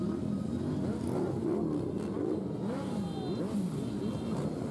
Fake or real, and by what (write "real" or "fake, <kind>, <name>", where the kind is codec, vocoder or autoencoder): real